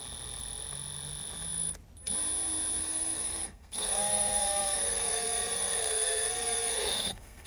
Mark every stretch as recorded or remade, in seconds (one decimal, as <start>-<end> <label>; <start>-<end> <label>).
0.0-2.8 recorded; 2.8-7.5 remade